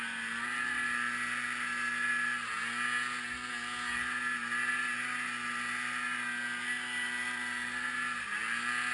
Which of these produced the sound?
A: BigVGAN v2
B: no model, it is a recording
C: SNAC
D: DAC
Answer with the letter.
B